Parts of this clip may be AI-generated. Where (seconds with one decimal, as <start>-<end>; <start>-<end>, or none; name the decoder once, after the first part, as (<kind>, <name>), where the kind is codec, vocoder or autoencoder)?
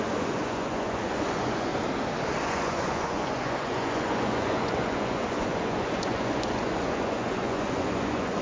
0.0-1.7 (vocoder, Vocos); 2.4-8.4